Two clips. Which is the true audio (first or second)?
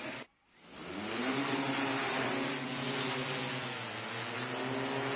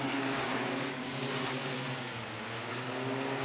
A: first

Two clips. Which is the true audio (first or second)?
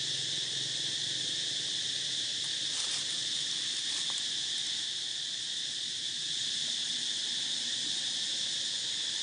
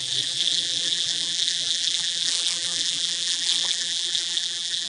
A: first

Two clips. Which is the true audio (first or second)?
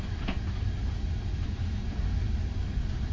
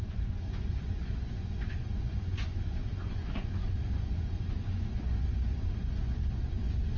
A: first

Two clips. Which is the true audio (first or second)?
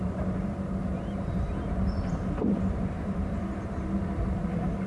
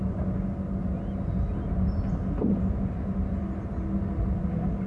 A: second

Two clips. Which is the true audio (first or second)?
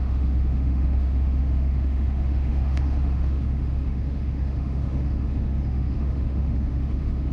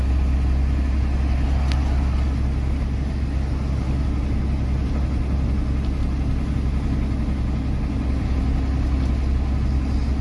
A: second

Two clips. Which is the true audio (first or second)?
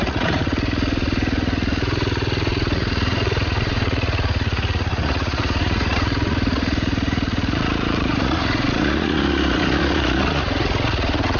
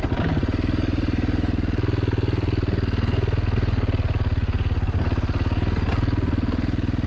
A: second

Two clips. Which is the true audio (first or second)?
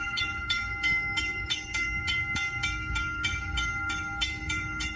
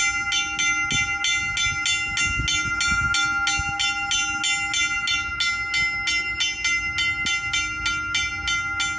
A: second